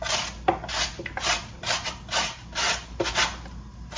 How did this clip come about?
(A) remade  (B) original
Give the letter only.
B